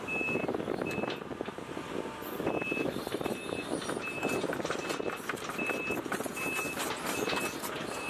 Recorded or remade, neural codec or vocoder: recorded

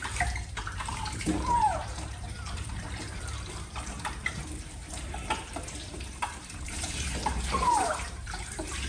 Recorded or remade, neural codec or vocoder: remade, vocoder, BigVGAN v2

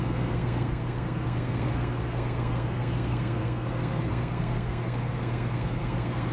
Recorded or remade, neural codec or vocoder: remade, codec, SNAC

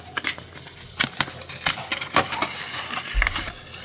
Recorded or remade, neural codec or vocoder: recorded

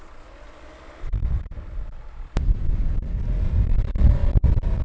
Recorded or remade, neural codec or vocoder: recorded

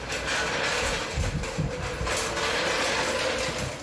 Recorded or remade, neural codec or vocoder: recorded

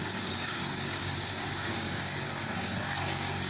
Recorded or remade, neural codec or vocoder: remade, codec, DAC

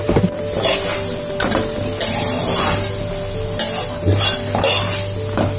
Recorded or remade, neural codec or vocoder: recorded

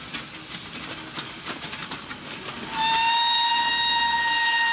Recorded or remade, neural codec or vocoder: recorded